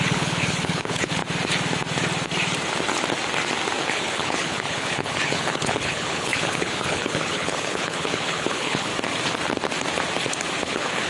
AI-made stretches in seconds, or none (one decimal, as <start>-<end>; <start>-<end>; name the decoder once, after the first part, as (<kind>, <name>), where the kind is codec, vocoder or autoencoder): 0.0-1.2 (codec, HILCodec); 3.8-8.9; 10.6-11.1